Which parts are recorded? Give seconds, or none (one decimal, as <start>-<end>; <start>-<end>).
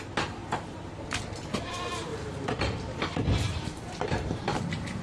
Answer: 0.0-0.4; 1.0-2.1; 4.6-5.0